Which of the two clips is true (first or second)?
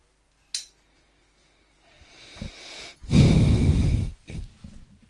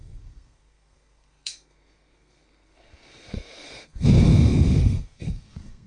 first